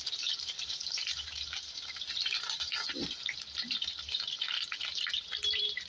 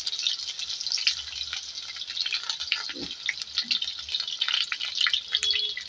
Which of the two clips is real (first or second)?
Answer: second